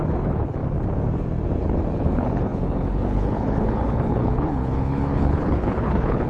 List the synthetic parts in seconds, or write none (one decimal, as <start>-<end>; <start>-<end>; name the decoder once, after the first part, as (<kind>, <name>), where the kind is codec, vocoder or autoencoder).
0.0-0.6 (codec, HILCodec); 2.0-6.3